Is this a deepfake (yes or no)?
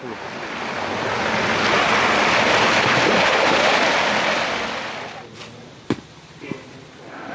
no